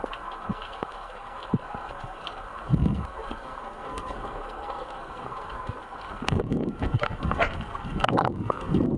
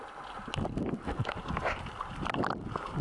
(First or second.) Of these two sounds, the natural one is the second